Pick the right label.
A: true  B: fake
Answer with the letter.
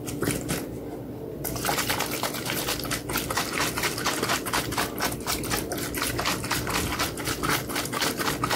A